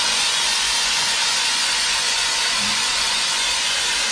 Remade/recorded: remade